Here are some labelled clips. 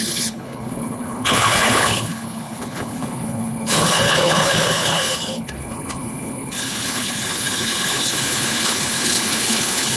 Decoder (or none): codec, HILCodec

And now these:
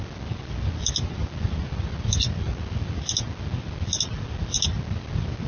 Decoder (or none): none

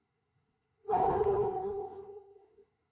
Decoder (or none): codec, SNAC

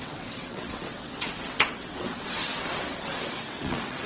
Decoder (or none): vocoder, WaveNeXt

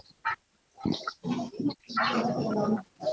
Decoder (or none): none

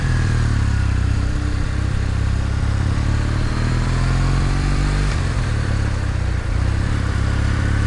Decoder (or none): vocoder, BigVGAN v2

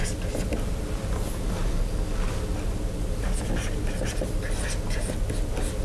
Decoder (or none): none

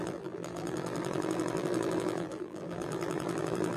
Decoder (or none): vocoder, BigVGAN v2